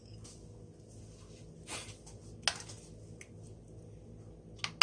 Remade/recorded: recorded